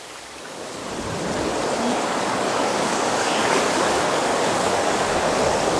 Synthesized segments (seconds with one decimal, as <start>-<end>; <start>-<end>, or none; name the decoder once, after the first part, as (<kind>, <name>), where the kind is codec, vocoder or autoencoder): 0.0-0.8 (codec, DAC); 1.9-5.8